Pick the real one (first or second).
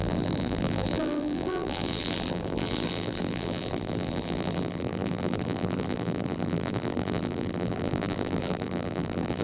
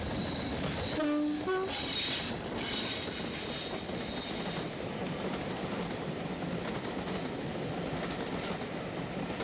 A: second